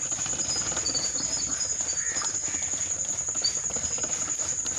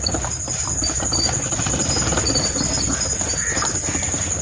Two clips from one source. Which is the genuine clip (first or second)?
first